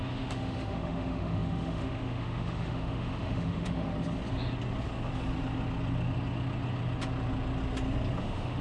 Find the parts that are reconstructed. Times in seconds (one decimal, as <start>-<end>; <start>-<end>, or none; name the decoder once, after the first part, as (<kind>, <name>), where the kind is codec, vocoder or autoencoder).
0.0-3.9 (autoencoder, DAC-VAE); 8.2-8.6